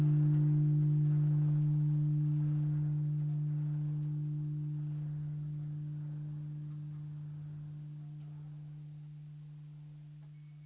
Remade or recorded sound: recorded